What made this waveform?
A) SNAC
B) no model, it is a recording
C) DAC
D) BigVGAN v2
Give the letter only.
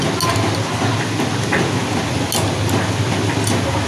B